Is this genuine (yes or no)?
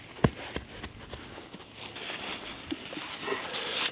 yes